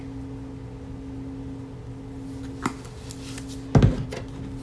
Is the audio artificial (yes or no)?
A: no